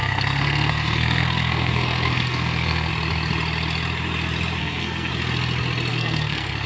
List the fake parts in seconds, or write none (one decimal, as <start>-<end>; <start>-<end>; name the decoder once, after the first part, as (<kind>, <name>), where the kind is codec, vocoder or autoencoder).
0.0-2.9 (codec, SNAC); 4.6-5.1; 5.9-6.7